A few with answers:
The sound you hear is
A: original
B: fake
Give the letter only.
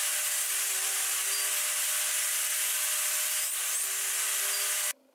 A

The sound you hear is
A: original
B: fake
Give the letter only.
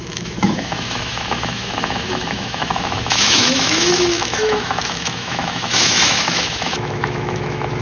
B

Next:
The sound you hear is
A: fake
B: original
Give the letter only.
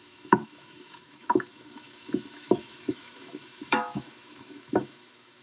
A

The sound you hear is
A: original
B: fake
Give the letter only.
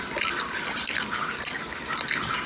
A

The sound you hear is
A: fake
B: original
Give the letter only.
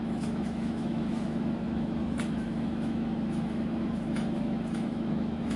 A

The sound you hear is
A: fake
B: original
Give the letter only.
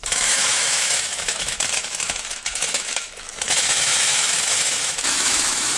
A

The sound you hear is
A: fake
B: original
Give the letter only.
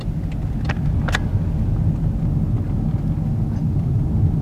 B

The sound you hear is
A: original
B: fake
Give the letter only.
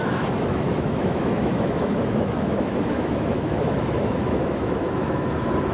B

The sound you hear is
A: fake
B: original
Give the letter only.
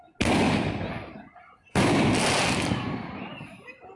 B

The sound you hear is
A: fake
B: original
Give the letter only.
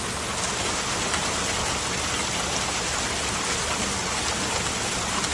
B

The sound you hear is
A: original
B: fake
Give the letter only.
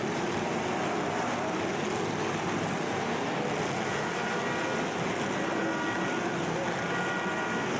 A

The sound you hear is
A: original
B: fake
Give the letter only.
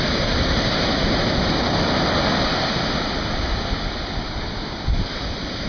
A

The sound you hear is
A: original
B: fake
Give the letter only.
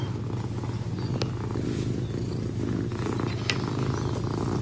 A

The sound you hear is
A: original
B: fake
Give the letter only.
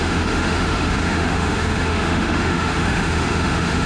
B